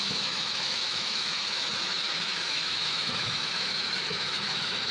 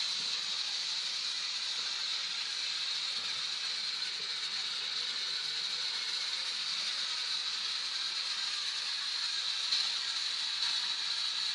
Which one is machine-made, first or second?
first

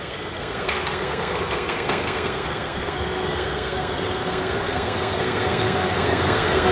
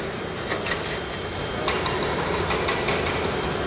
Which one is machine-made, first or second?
first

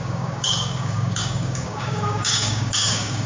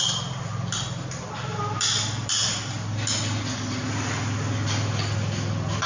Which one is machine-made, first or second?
first